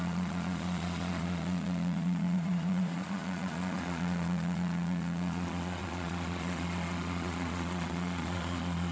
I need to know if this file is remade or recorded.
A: remade